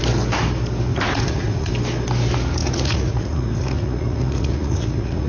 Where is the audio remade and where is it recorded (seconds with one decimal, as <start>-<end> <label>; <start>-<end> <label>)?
0.0-0.9 recorded; 0.9-1.7 remade; 1.7-2.6 recorded; 2.6-5.3 remade